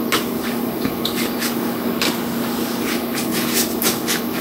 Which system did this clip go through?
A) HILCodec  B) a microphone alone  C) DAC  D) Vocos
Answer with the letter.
C